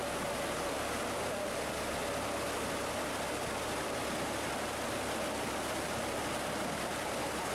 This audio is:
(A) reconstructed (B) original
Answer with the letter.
B